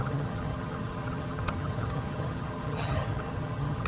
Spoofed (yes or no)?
yes